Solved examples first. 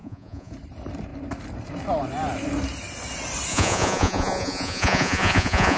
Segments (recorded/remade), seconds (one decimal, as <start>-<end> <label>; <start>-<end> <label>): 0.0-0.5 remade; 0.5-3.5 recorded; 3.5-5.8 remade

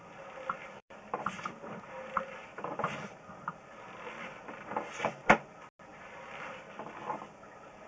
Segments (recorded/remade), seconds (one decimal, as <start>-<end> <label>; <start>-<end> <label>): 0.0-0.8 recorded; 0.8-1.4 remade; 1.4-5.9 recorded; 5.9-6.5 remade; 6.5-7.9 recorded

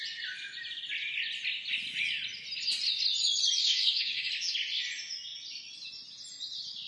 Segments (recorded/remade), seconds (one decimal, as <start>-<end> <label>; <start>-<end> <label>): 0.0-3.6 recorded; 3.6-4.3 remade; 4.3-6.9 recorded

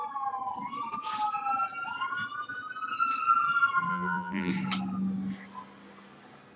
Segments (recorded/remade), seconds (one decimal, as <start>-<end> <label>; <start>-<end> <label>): 0.0-3.9 recorded; 3.9-4.5 remade; 4.5-6.6 recorded

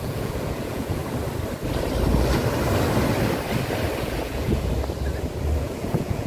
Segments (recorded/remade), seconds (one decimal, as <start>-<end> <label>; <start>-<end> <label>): 0.0-1.0 remade; 1.0-4.0 recorded; 4.0-4.7 remade; 4.7-5.6 recorded; 5.6-6.3 remade